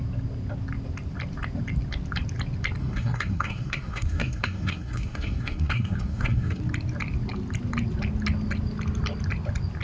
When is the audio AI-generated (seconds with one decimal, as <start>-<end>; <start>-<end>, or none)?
2.8-6.6